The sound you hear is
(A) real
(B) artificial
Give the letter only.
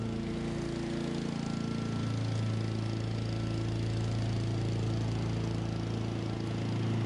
A